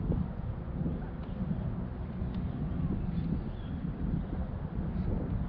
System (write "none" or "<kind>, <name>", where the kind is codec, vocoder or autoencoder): none